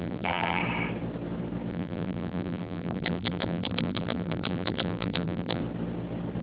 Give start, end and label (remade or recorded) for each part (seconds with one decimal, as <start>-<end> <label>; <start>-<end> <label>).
0.0-0.6 remade; 0.6-1.7 recorded; 1.7-5.6 remade; 5.6-6.4 recorded